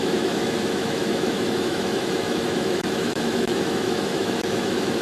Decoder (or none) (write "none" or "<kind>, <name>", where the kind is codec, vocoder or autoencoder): autoencoder, DAC-VAE